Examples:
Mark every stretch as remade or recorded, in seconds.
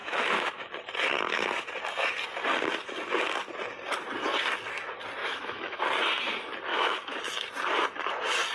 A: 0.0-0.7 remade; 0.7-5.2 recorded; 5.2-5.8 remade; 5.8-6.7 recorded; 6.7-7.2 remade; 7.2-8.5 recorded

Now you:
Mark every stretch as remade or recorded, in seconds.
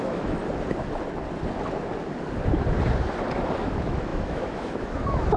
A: 0.0-0.4 remade; 0.4-3.6 recorded; 3.6-5.4 remade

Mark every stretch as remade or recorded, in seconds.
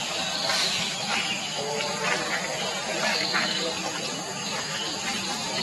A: 0.0-0.6 recorded; 0.6-1.8 remade; 1.8-3.1 recorded; 3.1-3.6 remade; 3.6-4.4 recorded; 4.4-5.0 remade; 5.0-5.6 recorded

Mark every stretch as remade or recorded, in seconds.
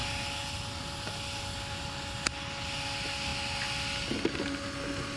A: 0.0-5.2 recorded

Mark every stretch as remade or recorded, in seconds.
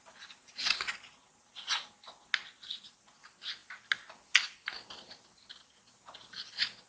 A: 0.0-6.9 recorded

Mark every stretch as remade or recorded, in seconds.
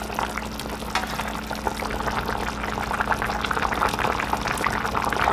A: 0.0-5.3 recorded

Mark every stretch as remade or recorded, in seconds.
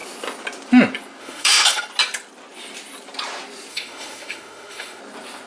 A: 0.0-1.2 recorded; 1.2-1.8 remade; 1.8-3.7 recorded; 3.7-5.0 remade; 5.0-5.5 recorded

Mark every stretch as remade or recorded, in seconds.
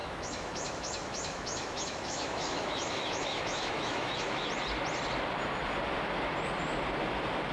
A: 0.0-4.5 remade; 4.5-7.5 recorded